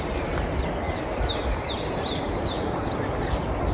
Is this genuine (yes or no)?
yes